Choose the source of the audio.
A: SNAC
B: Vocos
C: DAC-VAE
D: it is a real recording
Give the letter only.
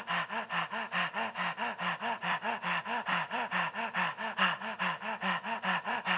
D